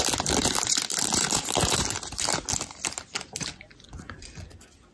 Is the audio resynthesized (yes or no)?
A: no